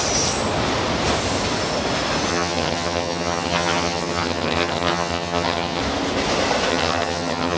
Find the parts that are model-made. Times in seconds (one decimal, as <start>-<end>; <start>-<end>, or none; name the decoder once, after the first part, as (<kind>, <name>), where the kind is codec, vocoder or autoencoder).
2.3-5.8 (vocoder, HiFi-GAN); 6.7-7.6